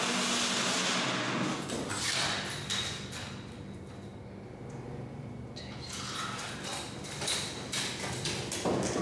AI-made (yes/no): no